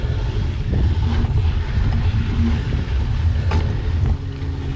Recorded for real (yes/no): yes